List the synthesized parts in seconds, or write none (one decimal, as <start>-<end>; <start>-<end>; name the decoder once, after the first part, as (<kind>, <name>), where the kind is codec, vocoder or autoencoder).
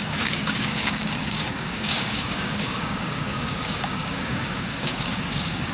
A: 0.0-5.7 (codec, DAC)